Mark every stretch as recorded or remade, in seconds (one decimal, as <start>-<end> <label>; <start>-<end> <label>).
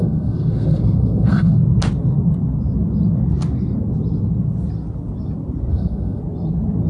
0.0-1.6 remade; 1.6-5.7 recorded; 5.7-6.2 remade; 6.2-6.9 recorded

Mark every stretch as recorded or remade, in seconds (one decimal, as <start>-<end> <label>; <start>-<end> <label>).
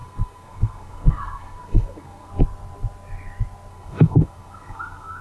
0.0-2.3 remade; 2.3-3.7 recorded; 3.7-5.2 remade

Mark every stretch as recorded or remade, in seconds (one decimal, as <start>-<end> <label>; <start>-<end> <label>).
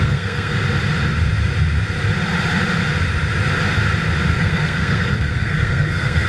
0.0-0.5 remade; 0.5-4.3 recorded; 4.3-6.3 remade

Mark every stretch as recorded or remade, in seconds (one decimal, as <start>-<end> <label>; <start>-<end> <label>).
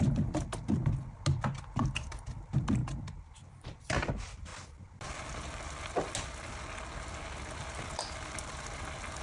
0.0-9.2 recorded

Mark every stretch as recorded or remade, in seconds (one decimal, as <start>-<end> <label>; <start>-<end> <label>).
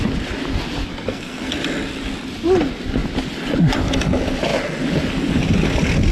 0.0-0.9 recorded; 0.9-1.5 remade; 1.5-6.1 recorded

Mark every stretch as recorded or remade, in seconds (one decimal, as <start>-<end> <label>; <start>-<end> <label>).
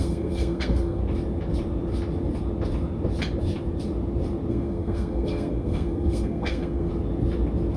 0.0-1.0 remade; 1.0-4.5 recorded; 4.5-6.9 remade; 6.9-7.8 recorded